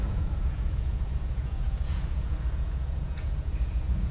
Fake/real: fake